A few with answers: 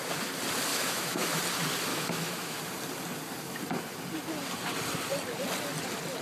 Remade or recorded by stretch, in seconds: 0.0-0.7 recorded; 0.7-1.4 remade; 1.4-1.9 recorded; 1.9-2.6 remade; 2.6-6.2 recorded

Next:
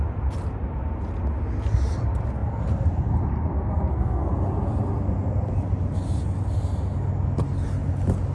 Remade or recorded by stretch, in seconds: 0.0-3.5 recorded; 3.5-4.3 remade; 4.3-8.3 recorded

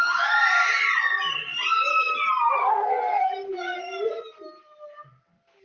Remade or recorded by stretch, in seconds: 0.0-2.6 recorded; 2.6-3.3 remade; 3.3-5.6 recorded

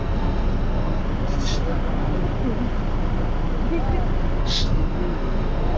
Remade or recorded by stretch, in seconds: 0.0-1.0 remade; 1.0-4.4 recorded; 4.4-5.8 remade

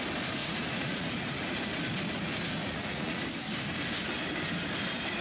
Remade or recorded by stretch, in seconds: 0.0-0.4 recorded; 0.4-1.6 remade; 1.6-2.6 recorded; 2.6-3.2 remade; 3.2-5.2 recorded

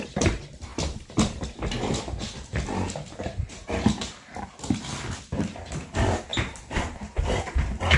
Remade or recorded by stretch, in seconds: 0.0-8.0 recorded